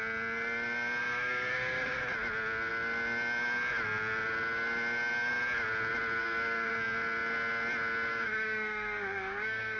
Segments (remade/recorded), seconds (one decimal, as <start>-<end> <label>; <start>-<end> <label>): 0.0-1.0 recorded; 1.0-2.0 remade; 2.0-6.2 recorded; 6.2-6.7 remade; 6.7-8.1 recorded; 8.1-9.8 remade